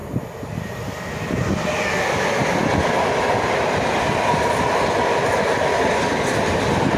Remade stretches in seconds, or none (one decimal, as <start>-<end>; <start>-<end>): 0.0-1.5